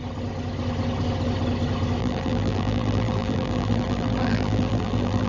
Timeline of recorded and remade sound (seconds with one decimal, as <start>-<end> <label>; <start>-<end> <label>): 0.0-2.0 recorded; 2.0-5.3 remade